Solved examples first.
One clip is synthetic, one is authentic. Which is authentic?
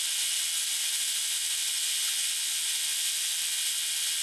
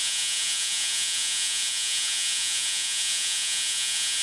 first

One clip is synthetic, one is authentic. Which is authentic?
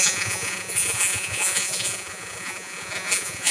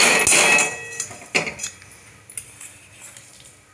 second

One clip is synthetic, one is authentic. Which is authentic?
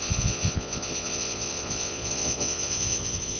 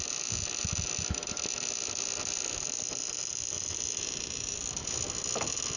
second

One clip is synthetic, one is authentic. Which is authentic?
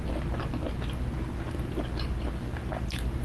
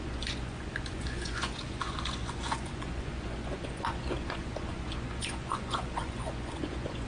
first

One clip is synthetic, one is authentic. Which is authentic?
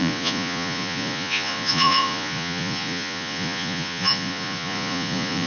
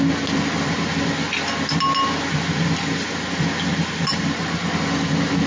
second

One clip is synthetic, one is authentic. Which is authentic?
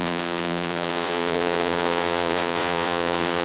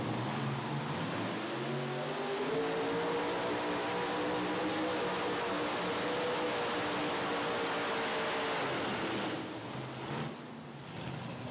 second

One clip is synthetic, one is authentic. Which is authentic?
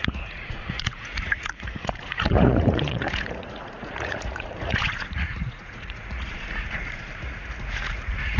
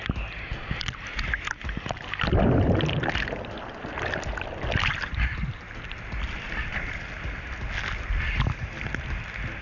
second